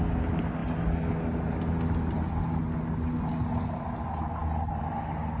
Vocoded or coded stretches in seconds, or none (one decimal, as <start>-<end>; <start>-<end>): none